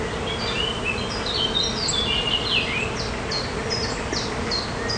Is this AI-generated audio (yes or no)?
no